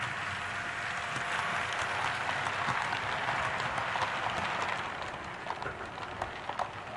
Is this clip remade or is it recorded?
recorded